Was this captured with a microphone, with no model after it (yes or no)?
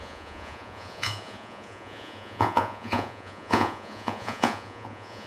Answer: no